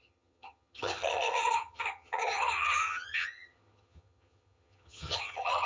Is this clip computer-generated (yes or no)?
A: yes